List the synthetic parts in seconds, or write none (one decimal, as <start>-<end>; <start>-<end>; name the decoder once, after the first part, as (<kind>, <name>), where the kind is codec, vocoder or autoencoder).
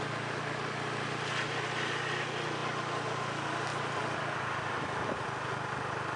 3.7-4.2 (vocoder, BigVGAN v2)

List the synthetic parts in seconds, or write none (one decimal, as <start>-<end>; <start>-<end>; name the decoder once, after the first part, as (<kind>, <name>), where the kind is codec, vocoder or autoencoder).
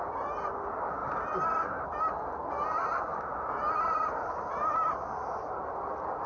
1.0-1.6 (vocoder, BigVGAN v2); 2.4-6.3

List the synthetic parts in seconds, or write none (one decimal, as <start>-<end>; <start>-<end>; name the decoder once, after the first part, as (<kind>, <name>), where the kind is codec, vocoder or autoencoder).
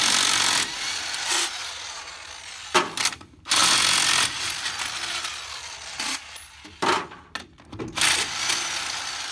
1.6-2.1 (vocoder, BigVGAN v2)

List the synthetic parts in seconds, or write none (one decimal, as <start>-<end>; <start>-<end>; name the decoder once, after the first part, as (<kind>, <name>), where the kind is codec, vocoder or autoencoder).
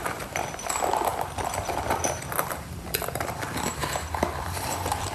0.0-3.8 (vocoder, BigVGAN v2); 4.4-5.1